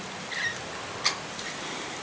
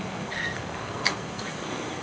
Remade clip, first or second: second